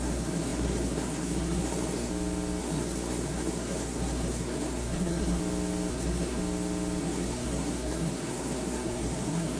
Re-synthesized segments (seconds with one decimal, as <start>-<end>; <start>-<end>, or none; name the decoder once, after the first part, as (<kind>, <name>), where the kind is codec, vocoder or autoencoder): 0.0-2.1 (codec, SNAC); 2.6-5.4; 5.9-6.4; 7.0-9.6